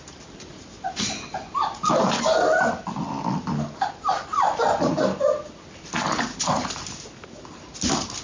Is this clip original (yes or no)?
yes